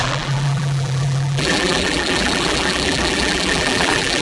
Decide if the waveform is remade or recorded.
remade